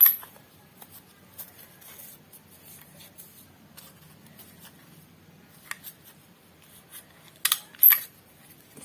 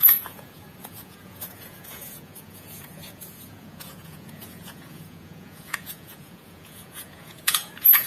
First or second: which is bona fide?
first